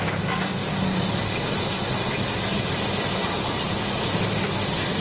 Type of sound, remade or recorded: recorded